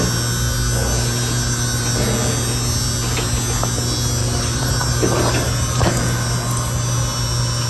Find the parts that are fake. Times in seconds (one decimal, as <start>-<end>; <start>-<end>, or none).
4.2-4.7